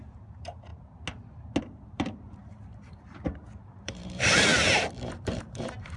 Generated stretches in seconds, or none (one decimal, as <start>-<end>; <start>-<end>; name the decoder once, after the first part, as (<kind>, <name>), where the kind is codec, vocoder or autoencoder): 0.0-0.7 (vocoder, BigVGAN v2); 1.6-4.5; 5.1-6.0